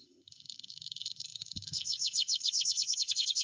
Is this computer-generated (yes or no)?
yes